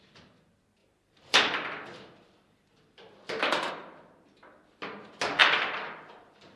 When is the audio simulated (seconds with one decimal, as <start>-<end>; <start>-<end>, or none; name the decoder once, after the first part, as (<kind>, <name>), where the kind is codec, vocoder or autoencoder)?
0.8-3.7 (vocoder, BigVGAN v2); 5.4-6.6